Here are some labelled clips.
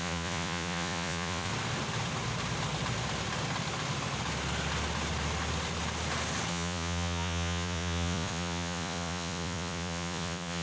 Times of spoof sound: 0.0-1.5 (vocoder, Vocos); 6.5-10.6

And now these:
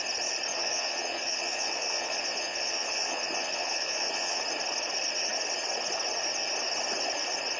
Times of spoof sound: 0.5-4.4 (vocoder, Vocos)